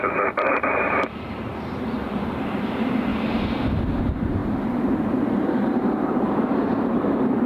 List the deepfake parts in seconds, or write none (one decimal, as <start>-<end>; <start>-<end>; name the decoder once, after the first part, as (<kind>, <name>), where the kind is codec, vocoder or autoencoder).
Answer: 0.0-1.5 (vocoder, BigVGAN v2); 2.1-3.1; 4.0-7.5